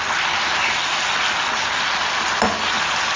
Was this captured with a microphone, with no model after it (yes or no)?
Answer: yes